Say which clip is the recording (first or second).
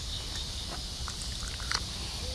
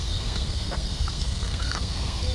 first